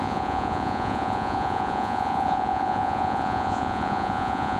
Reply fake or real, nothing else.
fake